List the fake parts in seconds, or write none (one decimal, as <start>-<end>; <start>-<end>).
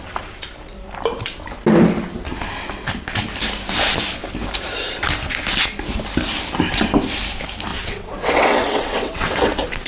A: 7.7-9.5